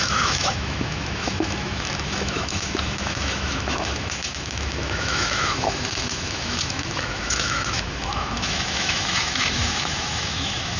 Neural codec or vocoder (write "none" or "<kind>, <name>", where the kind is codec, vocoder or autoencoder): autoencoder, DAC-VAE